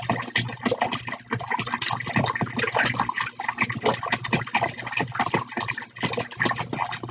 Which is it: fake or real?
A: real